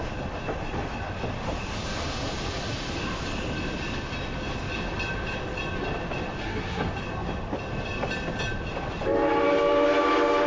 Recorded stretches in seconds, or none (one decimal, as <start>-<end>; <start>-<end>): 0.0-6.4; 6.9-10.5